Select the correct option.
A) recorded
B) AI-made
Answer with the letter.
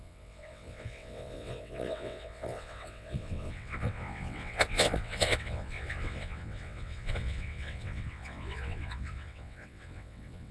B